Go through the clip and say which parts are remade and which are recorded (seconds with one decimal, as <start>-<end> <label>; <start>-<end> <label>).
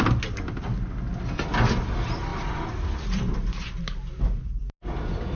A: 0.0-5.4 recorded